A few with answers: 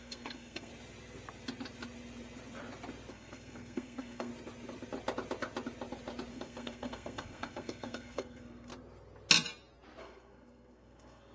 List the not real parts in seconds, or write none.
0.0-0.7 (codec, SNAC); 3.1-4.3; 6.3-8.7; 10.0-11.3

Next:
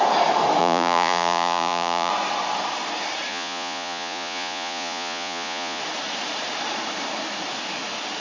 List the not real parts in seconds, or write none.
0.6-2.1 (vocoder, Vocos); 3.3-5.8

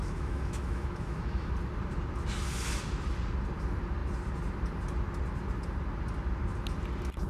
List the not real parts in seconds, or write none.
0.0-1.5 (autoencoder, DAC-VAE)